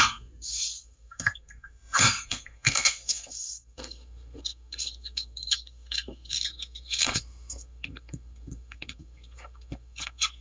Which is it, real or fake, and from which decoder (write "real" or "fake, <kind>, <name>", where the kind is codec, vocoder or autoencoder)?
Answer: fake, codec, SNAC